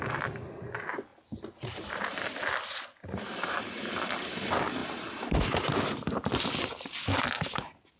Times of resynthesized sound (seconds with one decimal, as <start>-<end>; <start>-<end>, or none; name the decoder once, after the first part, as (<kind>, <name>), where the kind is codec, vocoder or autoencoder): none